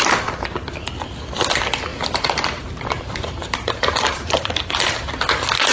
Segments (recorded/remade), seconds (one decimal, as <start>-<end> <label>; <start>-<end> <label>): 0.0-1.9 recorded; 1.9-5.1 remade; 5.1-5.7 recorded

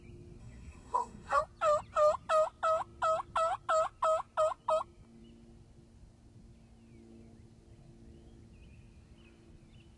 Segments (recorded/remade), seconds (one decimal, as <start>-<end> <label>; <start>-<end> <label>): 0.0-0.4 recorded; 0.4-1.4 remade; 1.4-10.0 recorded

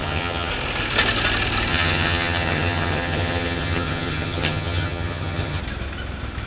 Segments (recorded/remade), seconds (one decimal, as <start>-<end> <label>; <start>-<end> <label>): 0.0-0.5 remade; 0.5-1.7 recorded; 1.7-5.6 remade; 5.6-6.5 recorded

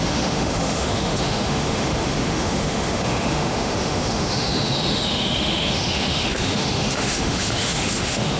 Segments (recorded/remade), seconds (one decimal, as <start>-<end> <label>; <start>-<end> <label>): 0.0-8.4 remade

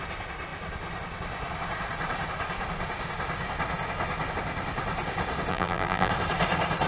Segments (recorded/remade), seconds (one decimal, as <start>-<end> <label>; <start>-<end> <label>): 0.0-5.5 recorded; 5.5-6.1 remade; 6.1-6.9 recorded

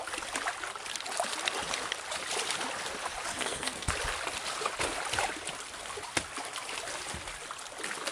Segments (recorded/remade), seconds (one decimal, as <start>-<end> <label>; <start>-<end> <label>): 0.0-3.3 recorded; 3.3-3.9 remade; 3.9-8.1 recorded

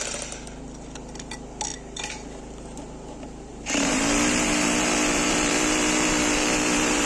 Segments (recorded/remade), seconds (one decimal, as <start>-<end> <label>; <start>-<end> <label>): 0.0-3.5 recorded; 3.5-7.1 remade